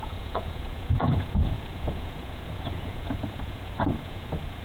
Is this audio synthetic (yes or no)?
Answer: yes